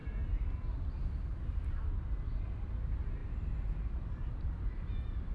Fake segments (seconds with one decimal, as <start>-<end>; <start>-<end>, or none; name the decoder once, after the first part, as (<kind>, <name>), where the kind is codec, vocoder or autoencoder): none

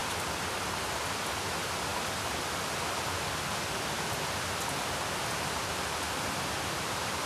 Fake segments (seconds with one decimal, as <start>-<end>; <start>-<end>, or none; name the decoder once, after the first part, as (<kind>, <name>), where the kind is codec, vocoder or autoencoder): none

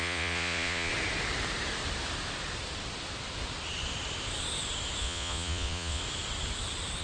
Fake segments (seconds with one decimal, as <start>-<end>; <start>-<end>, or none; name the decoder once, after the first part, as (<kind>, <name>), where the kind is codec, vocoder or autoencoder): 0.0-0.9 (vocoder, Vocos); 5.0-6.0